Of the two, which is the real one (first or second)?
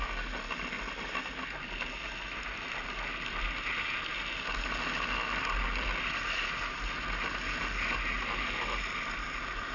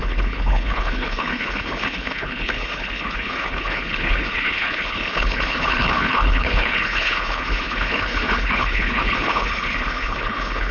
first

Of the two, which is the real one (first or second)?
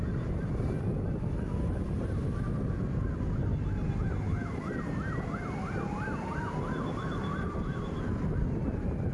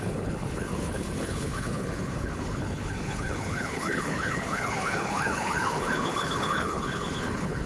first